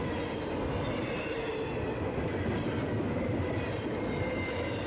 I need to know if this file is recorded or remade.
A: recorded